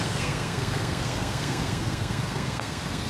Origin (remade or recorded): remade